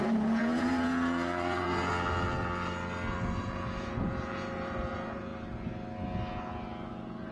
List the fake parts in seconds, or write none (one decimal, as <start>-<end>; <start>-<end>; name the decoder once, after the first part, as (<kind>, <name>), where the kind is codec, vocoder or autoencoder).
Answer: 0.0-1.9 (vocoder, Vocos); 3.4-5.3